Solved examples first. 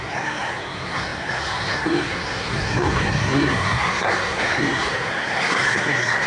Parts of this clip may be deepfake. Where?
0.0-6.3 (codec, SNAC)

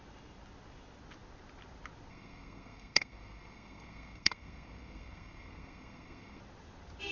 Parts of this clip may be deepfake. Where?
2.1-6.4 (codec, SNAC)

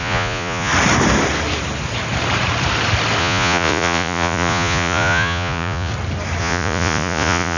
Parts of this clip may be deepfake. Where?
0.0-0.7 (vocoder, Vocos); 3.2-5.9; 6.4-7.6